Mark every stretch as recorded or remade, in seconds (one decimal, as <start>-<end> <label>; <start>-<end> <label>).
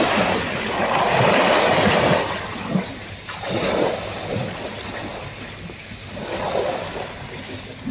0.0-7.9 recorded